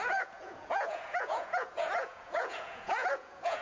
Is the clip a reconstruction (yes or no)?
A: yes